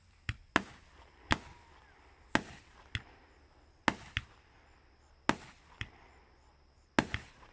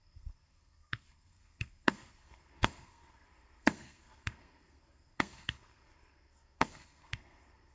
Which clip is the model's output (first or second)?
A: second